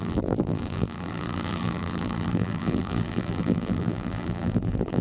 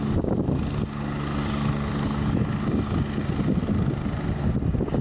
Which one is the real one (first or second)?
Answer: second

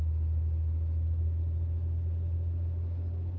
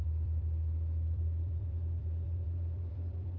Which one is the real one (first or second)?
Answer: first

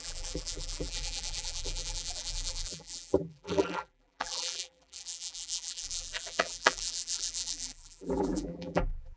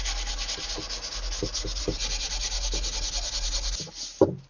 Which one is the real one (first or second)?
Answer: second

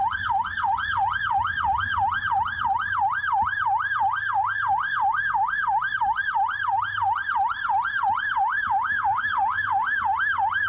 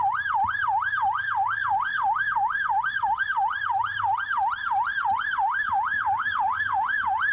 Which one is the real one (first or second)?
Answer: first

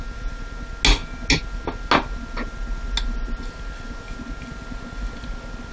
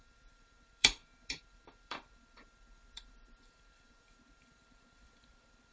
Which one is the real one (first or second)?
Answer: first